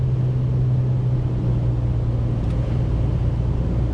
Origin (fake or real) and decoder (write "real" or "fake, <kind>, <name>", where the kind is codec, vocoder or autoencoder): real